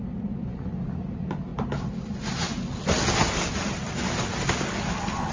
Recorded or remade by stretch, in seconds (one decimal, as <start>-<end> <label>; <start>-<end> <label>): 0.0-5.3 recorded